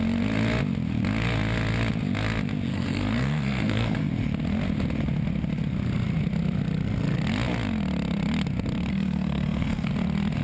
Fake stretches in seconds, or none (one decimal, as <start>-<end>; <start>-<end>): 2.7-4.1; 8.9-9.9